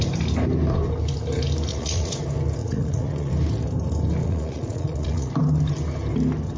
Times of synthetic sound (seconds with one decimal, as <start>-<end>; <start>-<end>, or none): 1.7-2.2; 2.6-3.3; 4.2-5.3

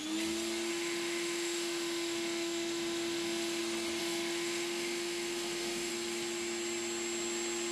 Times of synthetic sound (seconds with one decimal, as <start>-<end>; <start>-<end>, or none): 0.7-3.6; 4.0-5.9

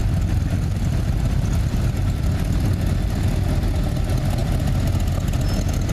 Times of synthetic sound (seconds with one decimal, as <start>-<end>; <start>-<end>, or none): 0.0-3.5

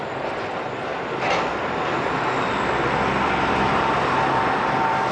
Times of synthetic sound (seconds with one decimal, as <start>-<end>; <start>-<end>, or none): none

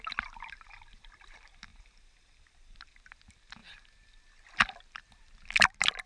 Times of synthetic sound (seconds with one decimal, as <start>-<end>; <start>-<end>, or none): 1.7-2.8

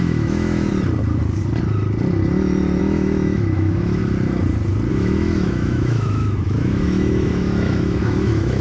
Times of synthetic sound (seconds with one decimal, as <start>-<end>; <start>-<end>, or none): 0.0-0.7; 2.8-4.0; 4.9-8.6

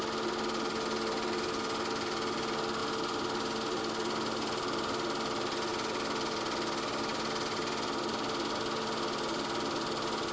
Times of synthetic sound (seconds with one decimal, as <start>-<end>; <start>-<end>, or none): none

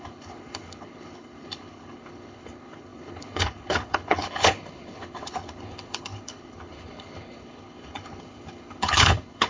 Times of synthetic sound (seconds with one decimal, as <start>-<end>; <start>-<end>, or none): 0.0-9.5